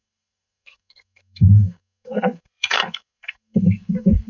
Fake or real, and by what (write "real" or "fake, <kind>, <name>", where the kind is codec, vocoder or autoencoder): fake, codec, SNAC